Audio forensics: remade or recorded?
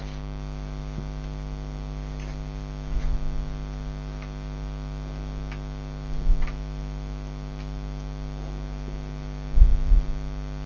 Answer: recorded